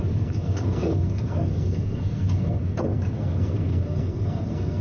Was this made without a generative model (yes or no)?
no